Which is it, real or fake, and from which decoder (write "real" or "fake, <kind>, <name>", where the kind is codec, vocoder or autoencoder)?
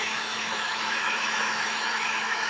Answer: fake, autoencoder, DAC-VAE